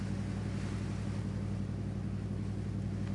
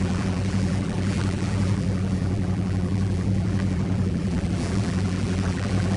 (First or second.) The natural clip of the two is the first